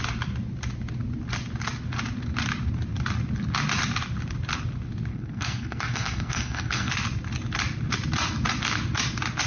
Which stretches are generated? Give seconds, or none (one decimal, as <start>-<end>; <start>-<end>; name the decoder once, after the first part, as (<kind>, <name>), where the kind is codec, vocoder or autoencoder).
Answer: 5.1-6.9 (codec, SNAC)